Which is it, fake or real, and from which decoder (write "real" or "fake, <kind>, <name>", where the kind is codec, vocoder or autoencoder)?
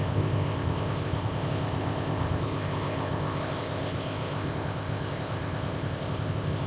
fake, codec, ZipCodec